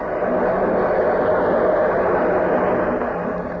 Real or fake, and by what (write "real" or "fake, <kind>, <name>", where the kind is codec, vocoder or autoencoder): real